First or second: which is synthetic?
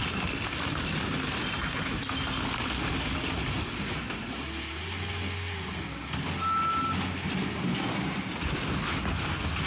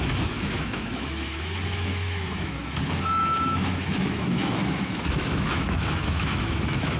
second